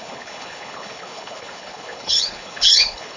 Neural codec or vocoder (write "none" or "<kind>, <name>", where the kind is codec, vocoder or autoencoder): codec, HILCodec